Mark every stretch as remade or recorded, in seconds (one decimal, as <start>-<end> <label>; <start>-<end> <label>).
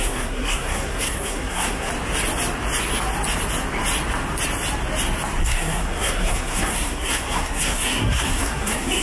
0.0-1.9 remade; 1.9-5.4 recorded; 5.4-9.0 remade